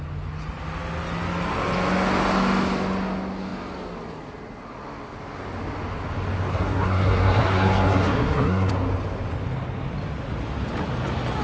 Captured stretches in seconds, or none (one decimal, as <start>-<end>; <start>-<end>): 0.0-6.5; 8.7-11.4